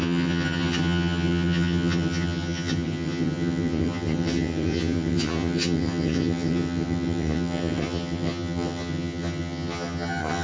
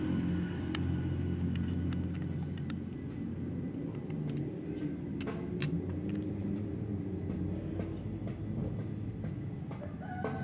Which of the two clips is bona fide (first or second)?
second